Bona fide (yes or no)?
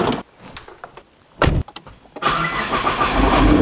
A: yes